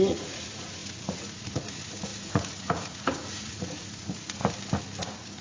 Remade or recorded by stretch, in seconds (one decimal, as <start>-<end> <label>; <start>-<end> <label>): 0.0-4.4 remade; 4.4-5.0 recorded; 5.0-5.4 remade